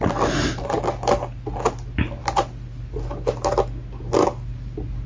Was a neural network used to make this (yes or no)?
no